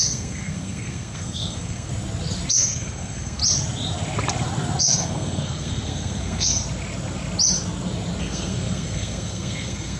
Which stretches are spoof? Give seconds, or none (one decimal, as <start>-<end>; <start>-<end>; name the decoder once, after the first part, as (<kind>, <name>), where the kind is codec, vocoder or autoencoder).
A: 0.0-1.9 (codec, SNAC); 2.5-3.4; 4.8-6.6; 8.2-10.0